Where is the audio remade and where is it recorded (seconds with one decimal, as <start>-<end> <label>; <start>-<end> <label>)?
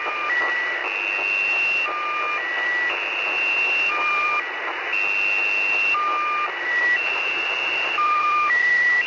0.0-0.8 remade; 0.8-3.9 recorded; 3.9-4.9 remade; 4.9-6.5 recorded; 6.5-9.1 remade